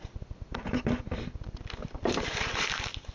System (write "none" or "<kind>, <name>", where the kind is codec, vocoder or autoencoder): none